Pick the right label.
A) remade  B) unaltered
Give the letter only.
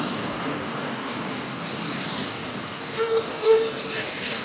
A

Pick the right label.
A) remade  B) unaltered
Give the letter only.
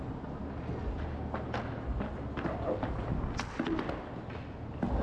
B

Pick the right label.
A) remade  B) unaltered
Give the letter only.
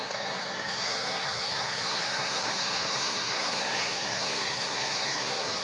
A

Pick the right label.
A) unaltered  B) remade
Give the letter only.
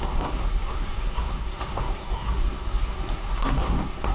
B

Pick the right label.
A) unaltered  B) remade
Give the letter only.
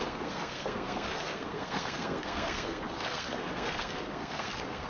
B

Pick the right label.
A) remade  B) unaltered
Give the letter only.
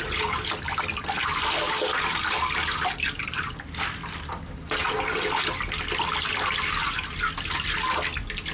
B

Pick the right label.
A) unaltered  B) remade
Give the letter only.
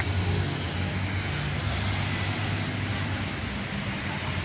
A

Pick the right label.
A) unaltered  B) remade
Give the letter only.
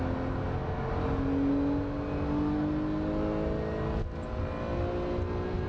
A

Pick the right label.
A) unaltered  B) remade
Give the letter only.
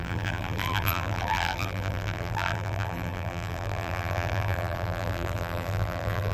B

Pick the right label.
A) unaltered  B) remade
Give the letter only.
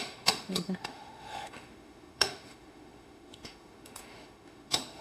B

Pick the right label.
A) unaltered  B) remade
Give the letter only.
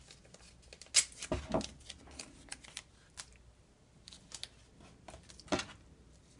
A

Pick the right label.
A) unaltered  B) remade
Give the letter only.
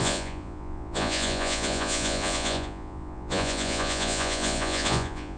B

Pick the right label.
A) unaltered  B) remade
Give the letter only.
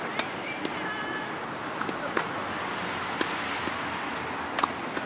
A